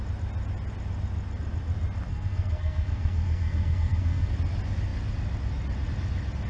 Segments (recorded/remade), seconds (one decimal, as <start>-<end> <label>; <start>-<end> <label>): 0.0-2.1 recorded; 2.1-4.3 remade; 4.3-6.5 recorded